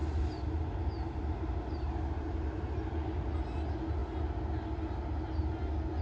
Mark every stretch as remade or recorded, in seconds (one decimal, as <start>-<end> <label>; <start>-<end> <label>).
0.0-2.6 remade; 2.6-6.0 recorded